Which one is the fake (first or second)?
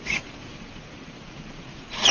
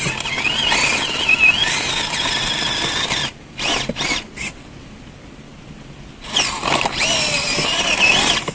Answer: first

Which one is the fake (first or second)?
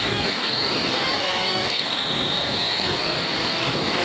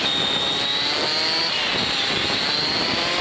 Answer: first